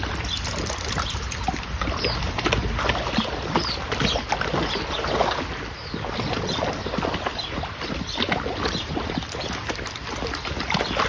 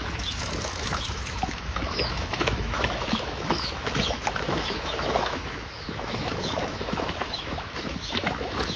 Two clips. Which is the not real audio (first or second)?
second